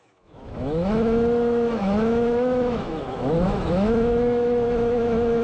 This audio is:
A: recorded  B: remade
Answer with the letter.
B